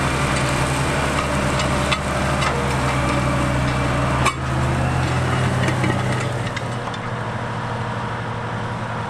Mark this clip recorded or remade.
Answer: recorded